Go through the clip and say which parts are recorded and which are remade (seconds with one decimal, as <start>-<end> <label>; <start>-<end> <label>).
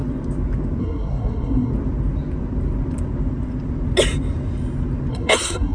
0.0-0.8 recorded; 0.8-1.7 remade; 1.7-5.1 recorded; 5.1-5.7 remade